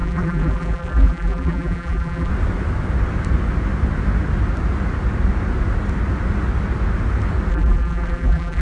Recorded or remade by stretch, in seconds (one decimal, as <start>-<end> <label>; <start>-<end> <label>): 0.0-2.3 remade; 2.3-7.5 recorded; 7.5-8.6 remade